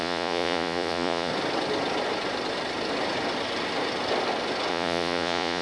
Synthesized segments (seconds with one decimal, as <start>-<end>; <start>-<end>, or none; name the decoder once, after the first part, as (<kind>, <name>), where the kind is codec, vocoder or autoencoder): 0.0-1.3 (vocoder, Vocos); 4.7-5.6